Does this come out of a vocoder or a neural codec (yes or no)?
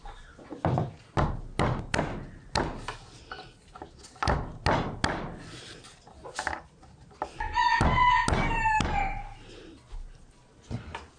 no